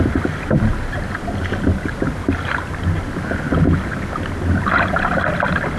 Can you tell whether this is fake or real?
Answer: real